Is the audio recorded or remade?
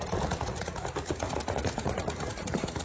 remade